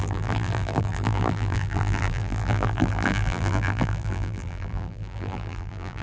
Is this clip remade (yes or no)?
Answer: yes